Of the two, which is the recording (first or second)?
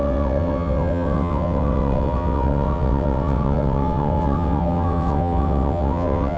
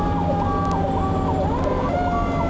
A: second